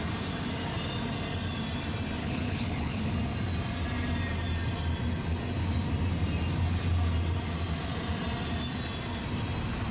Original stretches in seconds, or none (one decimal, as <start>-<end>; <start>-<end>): 0.0-2.2; 3.1-9.9